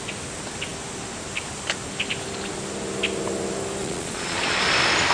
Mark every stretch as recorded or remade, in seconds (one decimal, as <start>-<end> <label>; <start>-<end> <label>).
0.0-3.8 recorded; 3.8-4.6 remade; 4.6-5.1 recorded